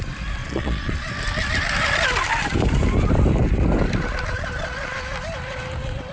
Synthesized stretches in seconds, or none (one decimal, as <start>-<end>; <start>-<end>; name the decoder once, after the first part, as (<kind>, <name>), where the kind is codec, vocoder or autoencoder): 0.4-1.1 (vocoder, Vocos)